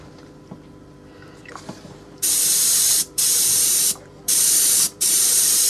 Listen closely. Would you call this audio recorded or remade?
remade